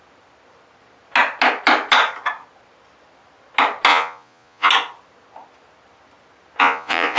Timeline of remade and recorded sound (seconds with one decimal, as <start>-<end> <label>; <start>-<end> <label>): 0.0-3.9 recorded; 3.9-4.7 remade; 4.7-6.6 recorded; 6.6-7.2 remade